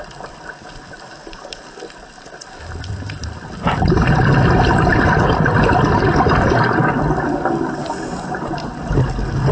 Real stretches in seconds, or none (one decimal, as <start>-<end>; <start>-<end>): 0.0-9.5